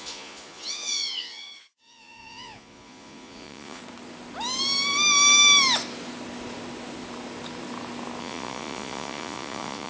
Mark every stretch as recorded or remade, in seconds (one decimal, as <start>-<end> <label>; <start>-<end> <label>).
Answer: 0.0-3.8 remade; 3.8-8.2 recorded; 8.2-9.9 remade